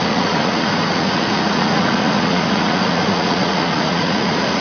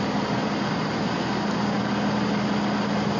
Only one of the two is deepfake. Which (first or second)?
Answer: first